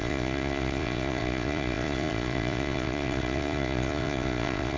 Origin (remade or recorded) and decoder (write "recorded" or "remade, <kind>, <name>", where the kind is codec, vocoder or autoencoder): remade, vocoder, Vocos